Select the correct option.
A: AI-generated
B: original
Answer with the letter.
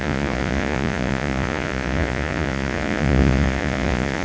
A